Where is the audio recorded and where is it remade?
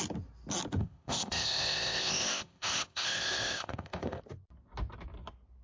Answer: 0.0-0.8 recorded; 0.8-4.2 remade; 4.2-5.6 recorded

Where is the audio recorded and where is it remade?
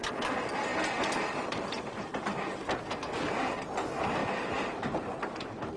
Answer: 0.0-5.8 recorded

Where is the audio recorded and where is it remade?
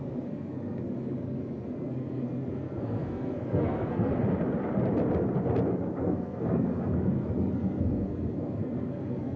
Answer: 0.0-4.1 remade; 4.1-6.0 recorded; 6.0-9.4 remade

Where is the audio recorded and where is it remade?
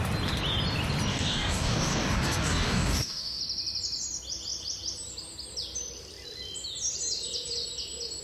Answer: 0.0-1.1 recorded; 1.1-3.4 remade; 3.4-8.2 recorded